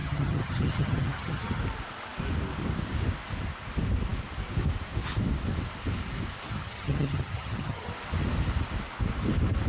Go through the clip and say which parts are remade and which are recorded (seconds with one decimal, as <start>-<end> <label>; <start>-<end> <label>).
0.0-1.6 remade; 1.6-6.5 recorded; 6.5-7.9 remade; 7.9-9.7 recorded